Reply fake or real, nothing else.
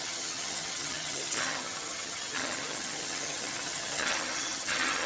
fake